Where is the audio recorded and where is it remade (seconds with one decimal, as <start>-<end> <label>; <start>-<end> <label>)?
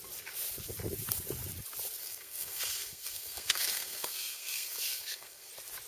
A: 0.0-2.0 recorded; 2.0-5.5 remade; 5.5-5.9 recorded